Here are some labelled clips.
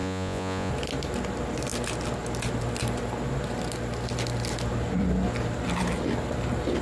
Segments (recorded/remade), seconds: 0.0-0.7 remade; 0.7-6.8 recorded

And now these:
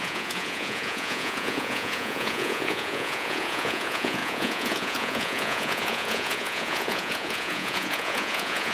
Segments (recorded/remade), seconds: 0.0-8.7 remade

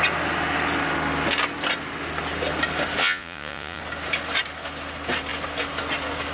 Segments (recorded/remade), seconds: 0.0-3.0 recorded; 3.0-3.8 remade; 3.8-6.3 recorded

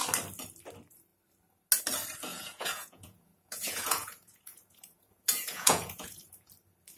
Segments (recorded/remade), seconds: 0.0-2.3 recorded; 2.3-6.5 remade; 6.5-7.0 recorded

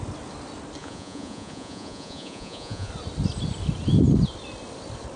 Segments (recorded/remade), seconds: 0.0-0.8 recorded; 0.8-2.9 remade; 2.9-5.2 recorded